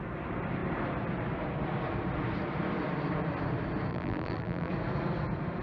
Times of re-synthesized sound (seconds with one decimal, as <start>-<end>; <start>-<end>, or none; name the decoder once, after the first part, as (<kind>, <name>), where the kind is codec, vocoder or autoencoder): 3.9-4.7 (vocoder, BigVGAN v2)